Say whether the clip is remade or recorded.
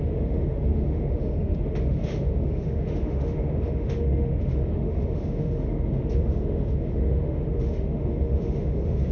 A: remade